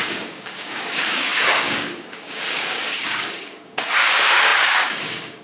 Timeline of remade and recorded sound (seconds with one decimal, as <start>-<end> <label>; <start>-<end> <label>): 0.0-5.4 remade